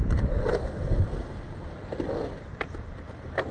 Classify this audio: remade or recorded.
recorded